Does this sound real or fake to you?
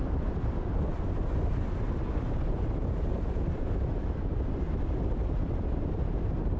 real